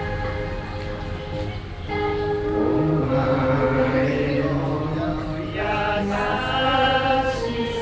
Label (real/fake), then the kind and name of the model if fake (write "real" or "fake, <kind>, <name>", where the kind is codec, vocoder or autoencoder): real